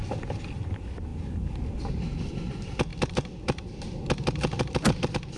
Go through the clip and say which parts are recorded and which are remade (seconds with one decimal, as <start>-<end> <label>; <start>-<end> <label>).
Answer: 0.0-5.4 recorded